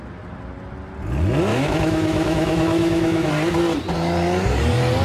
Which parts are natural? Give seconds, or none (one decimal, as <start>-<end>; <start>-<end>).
0.0-1.5; 3.3-5.0